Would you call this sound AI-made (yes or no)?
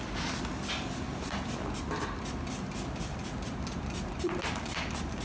no